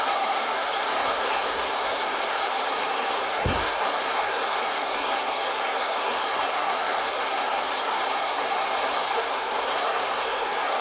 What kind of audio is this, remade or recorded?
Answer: remade